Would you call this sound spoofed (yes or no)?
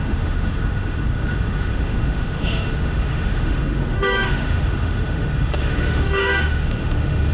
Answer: yes